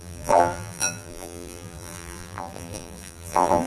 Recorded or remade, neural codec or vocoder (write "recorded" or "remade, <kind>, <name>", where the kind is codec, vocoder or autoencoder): remade, vocoder, BigVGAN v2